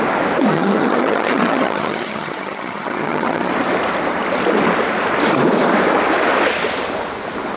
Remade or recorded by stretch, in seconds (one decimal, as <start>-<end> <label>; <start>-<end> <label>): 0.0-0.5 recorded; 0.5-3.5 remade; 3.5-7.6 recorded